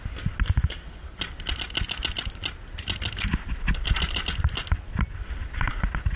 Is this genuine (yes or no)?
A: yes